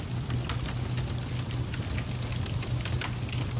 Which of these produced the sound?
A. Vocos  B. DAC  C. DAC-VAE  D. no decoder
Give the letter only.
D